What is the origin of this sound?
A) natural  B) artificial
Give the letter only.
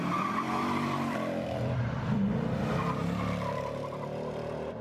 B